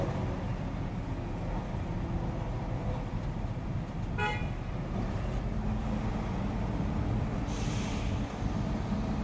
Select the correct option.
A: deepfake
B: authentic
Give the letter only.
B